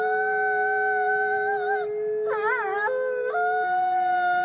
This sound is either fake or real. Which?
real